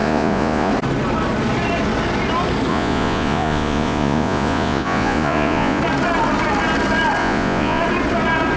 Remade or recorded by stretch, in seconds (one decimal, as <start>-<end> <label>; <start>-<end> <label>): 0.0-0.7 remade; 0.7-2.7 recorded; 2.7-5.8 remade; 5.8-7.2 recorded; 7.2-7.8 remade; 7.8-8.6 recorded